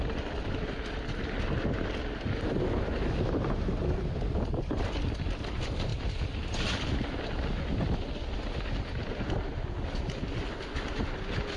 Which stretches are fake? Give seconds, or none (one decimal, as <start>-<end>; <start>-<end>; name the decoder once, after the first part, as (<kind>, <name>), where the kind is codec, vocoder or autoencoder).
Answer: none